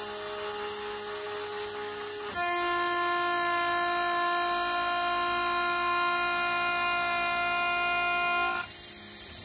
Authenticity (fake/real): real